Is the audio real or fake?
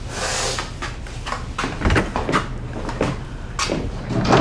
real